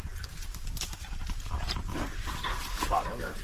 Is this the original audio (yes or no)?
no